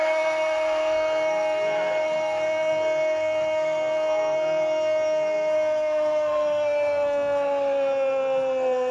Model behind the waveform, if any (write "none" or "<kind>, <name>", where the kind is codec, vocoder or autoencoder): codec, SNAC